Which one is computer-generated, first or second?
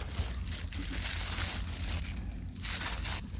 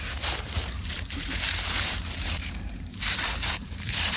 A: second